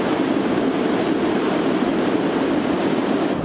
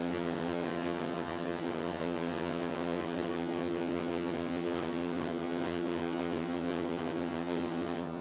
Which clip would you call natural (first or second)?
first